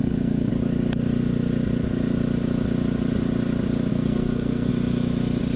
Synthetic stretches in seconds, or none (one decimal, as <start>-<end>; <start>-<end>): 0.0-0.5; 3.9-4.7